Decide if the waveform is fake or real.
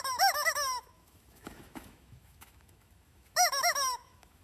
fake